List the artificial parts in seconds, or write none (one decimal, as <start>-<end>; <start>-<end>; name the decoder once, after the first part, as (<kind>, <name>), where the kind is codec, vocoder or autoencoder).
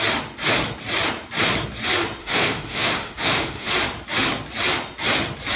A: 2.2-3.7 (autoencoder, DAC-VAE)